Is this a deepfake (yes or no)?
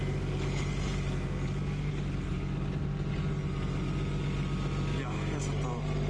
no